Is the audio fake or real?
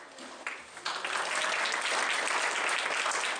real